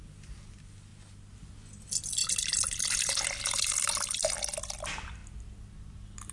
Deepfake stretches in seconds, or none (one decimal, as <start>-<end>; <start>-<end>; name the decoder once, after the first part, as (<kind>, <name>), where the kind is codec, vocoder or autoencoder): none